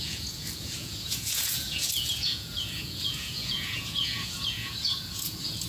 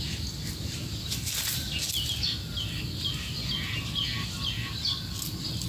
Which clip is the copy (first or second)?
first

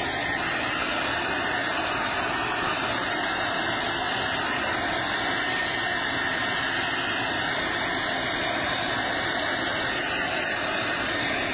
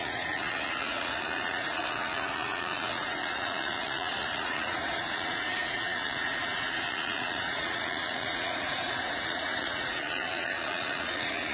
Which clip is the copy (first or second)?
second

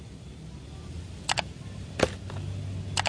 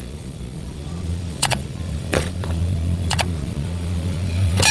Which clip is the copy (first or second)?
second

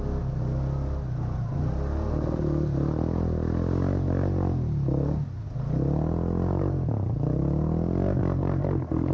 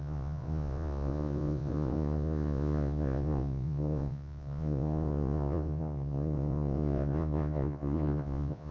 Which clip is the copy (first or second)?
second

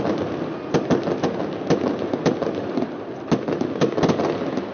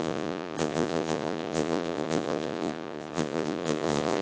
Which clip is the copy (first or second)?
second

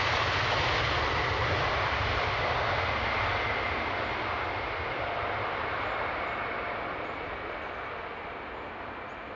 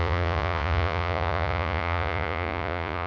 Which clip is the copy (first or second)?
second